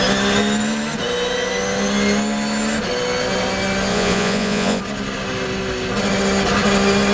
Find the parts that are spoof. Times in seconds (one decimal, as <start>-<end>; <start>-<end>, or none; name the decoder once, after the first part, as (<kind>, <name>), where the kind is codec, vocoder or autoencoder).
3.9-4.8 (vocoder, Vocos)